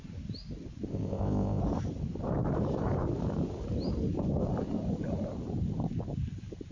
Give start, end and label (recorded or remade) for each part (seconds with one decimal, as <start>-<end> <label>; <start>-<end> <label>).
0.0-0.9 recorded; 0.9-1.6 remade; 1.6-6.7 recorded